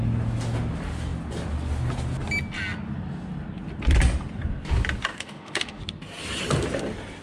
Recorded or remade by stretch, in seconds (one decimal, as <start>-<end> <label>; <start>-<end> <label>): 0.0-5.1 recorded; 5.1-5.8 remade; 5.8-7.2 recorded